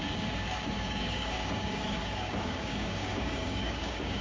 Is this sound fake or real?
fake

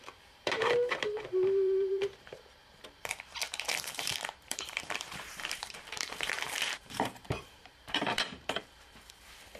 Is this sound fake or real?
fake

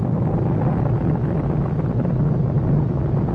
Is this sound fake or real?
real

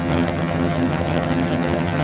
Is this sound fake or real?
fake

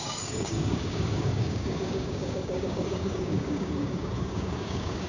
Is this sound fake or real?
fake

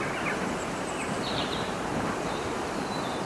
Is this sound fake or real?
fake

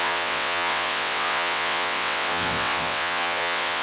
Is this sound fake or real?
fake